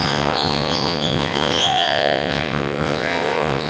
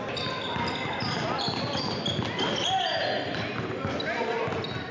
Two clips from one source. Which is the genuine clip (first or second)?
second